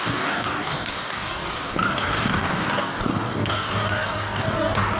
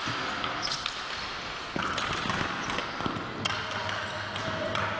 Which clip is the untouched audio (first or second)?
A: second